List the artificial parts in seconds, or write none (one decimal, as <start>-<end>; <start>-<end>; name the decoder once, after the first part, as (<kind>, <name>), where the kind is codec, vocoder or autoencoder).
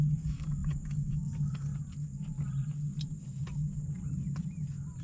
0.0-1.7 (codec, DAC)